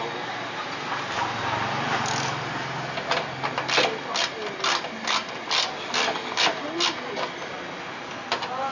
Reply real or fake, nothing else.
real